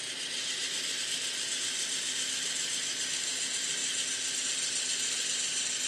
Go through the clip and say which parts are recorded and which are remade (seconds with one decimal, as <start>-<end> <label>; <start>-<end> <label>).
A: 0.0-1.0 remade; 1.0-5.9 recorded